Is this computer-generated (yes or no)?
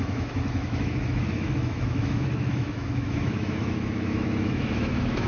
yes